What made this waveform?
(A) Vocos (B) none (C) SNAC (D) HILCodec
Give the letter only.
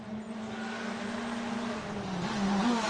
B